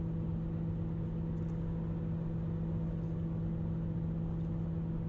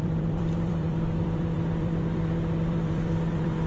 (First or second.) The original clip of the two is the first